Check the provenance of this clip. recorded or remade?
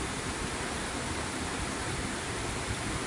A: remade